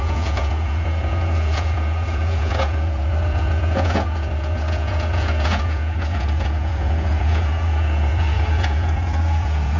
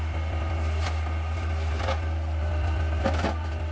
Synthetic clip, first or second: first